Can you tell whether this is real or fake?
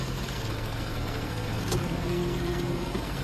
fake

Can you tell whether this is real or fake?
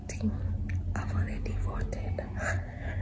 real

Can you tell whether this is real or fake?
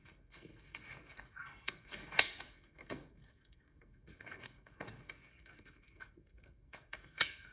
fake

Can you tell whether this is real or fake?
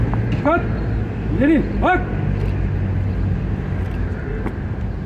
real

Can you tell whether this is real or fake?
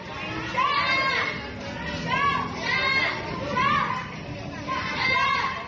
real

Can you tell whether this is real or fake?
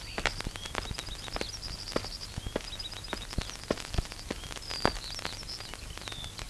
real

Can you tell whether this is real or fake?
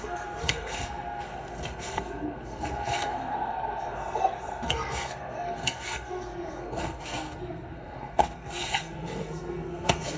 fake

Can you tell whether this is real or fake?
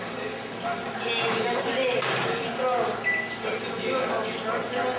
real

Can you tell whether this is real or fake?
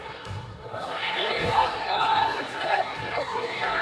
fake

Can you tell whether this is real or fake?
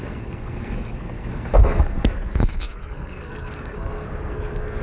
fake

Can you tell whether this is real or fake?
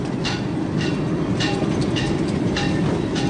real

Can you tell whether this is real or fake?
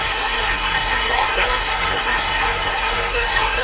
fake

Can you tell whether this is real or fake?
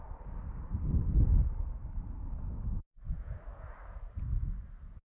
real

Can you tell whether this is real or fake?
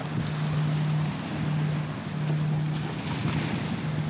real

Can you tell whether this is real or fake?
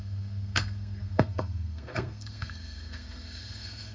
fake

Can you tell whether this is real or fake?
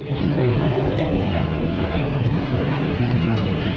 fake